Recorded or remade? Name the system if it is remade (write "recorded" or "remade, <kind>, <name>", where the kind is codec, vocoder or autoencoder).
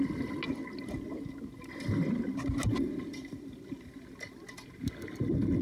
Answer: recorded